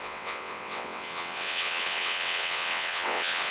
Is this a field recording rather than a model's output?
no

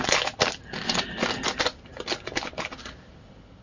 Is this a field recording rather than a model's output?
yes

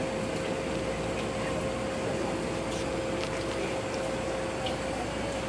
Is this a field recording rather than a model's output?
yes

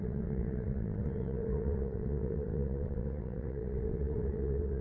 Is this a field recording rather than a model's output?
no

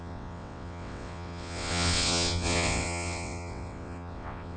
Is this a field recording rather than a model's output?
no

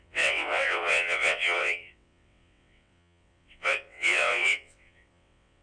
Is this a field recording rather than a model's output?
no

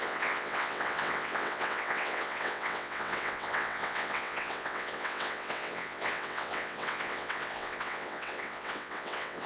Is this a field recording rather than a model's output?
no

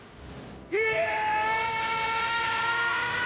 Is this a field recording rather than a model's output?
yes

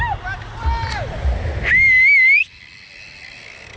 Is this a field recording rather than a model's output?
yes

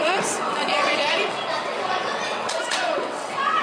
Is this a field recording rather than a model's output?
no